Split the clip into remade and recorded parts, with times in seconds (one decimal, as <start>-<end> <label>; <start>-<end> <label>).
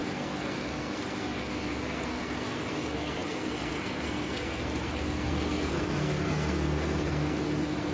0.0-7.9 remade